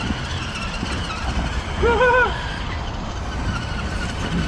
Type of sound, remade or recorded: recorded